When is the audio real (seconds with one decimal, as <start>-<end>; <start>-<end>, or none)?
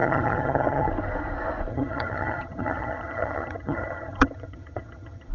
0.9-1.7